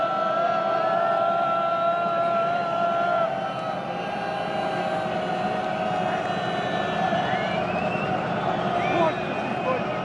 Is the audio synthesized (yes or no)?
no